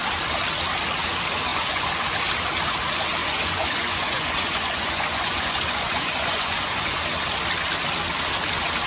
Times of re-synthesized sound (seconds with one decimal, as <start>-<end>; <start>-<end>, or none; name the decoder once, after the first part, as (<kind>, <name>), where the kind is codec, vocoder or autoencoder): 1.5-2.2 (vocoder, Vocos); 3.2-7.0